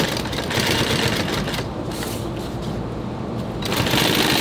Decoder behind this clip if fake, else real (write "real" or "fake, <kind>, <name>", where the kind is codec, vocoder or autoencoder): real